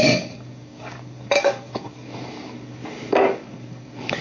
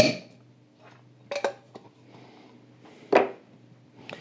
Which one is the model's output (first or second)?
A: first